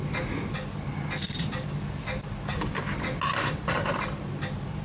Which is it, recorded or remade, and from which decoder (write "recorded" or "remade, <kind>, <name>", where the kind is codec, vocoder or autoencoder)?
recorded